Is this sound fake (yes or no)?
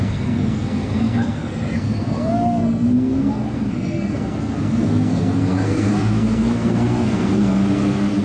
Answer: yes